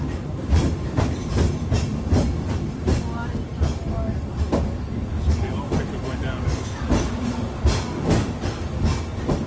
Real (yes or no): yes